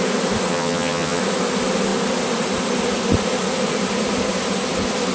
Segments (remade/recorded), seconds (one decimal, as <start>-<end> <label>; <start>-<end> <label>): 0.0-0.5 recorded; 0.5-1.2 remade; 1.2-5.1 recorded